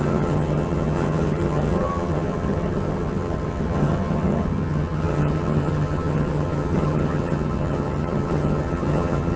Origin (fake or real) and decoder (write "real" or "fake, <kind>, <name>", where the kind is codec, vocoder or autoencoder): fake, vocoder, HiFi-GAN